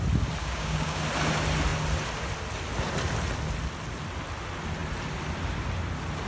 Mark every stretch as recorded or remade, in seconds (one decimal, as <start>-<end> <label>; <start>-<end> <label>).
0.0-0.4 recorded; 0.4-1.0 remade; 1.0-6.3 recorded